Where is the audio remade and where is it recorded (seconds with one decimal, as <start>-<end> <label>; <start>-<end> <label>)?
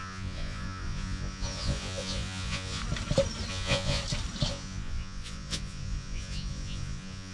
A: 0.0-2.8 remade; 2.8-3.5 recorded; 3.5-4.0 remade; 4.0-4.5 recorded; 4.5-7.3 remade